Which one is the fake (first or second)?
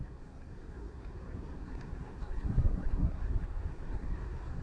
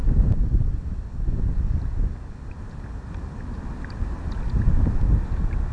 first